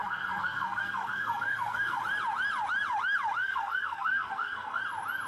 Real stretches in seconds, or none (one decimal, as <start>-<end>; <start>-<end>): 2.0-3.4; 4.8-5.3